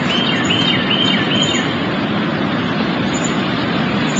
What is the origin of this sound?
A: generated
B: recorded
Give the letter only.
A